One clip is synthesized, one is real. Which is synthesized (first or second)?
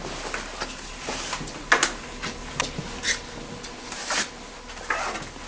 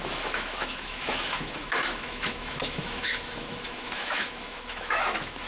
second